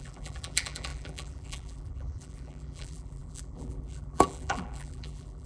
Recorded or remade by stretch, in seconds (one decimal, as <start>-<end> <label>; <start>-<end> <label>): 0.0-5.5 remade